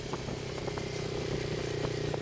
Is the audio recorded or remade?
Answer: recorded